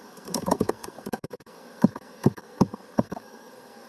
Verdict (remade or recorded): remade